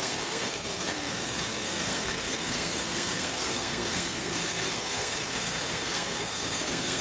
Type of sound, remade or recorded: remade